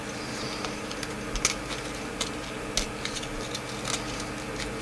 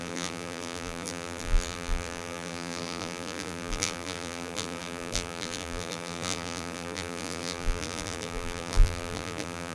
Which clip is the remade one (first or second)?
second